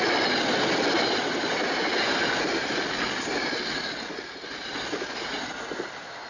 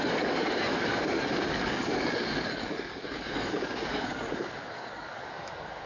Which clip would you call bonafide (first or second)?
first